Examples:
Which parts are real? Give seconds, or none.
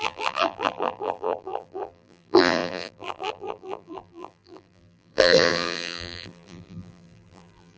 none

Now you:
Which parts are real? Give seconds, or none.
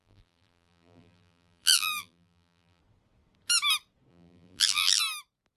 2.8-4.1; 5.0-5.6